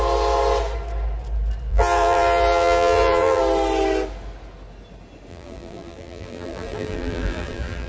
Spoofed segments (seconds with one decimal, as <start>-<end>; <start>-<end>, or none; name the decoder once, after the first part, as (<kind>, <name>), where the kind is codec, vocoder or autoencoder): 1.7-3.4 (vocoder, BigVGAN v2); 5.3-7.9